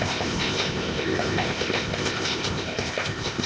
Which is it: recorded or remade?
remade